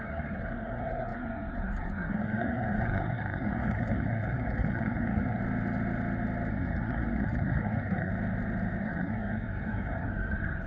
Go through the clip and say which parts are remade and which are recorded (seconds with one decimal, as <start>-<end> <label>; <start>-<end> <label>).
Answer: 0.0-5.4 remade; 5.4-6.5 recorded; 6.5-8.1 remade; 8.1-8.8 recorded; 8.8-10.7 remade